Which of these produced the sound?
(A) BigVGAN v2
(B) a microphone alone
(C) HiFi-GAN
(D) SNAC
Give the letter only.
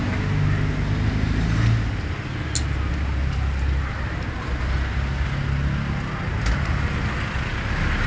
B